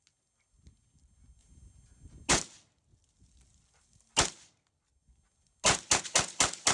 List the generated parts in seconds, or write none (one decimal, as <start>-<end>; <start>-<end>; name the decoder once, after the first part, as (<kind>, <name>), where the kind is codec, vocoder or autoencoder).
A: none